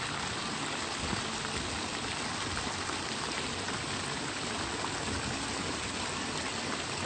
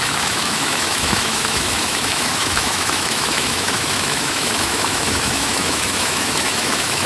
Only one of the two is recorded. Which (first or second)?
first